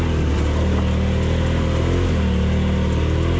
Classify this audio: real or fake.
real